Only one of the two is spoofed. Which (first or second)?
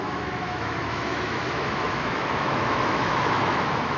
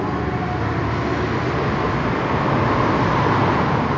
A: first